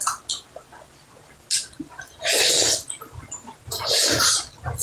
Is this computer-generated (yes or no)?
no